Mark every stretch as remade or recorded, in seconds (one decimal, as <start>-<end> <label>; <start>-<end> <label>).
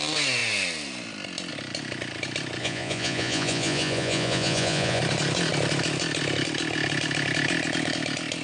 0.0-2.6 recorded; 2.6-5.0 remade; 5.0-8.4 recorded